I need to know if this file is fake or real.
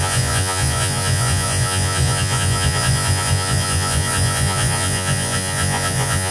fake